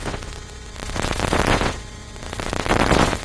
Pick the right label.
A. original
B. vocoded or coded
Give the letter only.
B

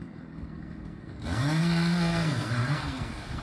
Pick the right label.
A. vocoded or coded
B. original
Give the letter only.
A